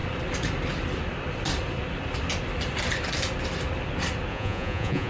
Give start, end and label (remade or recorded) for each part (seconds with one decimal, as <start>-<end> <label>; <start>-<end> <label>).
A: 0.0-4.3 recorded; 4.3-5.1 remade

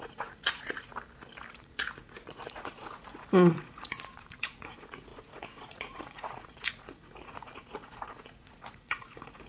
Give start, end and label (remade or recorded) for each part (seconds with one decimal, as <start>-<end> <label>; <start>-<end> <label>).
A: 0.0-0.9 remade; 0.9-1.6 recorded; 1.6-9.5 remade

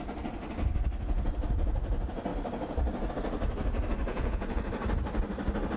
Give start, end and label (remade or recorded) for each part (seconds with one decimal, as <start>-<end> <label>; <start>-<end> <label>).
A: 0.0-4.1 recorded; 4.1-4.6 remade; 4.6-5.8 recorded

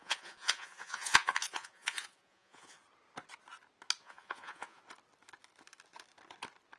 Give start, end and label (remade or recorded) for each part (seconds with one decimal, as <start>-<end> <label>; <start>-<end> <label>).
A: 0.0-2.8 remade; 2.8-4.0 recorded; 4.0-4.8 remade; 4.8-6.8 recorded

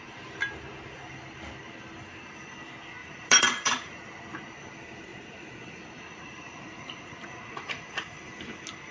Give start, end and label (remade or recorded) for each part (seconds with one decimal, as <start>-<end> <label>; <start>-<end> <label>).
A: 0.0-3.0 recorded; 3.0-3.9 remade; 3.9-5.1 recorded; 5.1-8.2 remade; 8.2-8.9 recorded

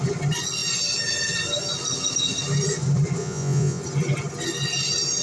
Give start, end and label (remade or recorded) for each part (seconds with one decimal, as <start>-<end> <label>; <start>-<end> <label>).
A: 0.0-3.2 recorded; 3.2-3.8 remade; 3.8-5.2 recorded

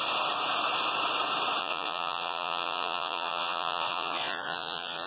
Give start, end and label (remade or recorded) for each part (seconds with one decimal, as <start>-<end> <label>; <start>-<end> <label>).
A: 0.0-1.6 recorded; 1.6-5.1 remade

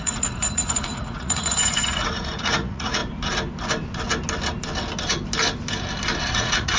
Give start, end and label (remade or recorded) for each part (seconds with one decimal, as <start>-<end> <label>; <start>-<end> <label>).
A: 0.0-3.0 remade; 3.0-6.3 recorded; 6.3-6.8 remade